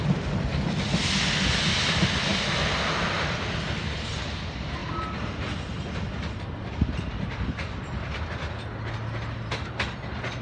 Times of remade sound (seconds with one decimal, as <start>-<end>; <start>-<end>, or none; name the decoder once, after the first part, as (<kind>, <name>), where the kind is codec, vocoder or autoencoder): none